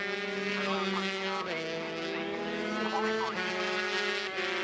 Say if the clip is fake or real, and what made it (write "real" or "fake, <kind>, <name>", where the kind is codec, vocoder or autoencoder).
real